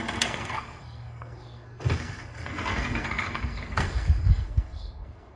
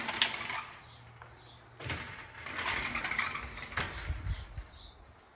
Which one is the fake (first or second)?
first